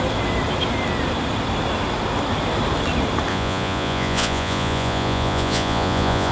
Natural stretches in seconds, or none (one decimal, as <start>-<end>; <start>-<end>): 0.0-3.3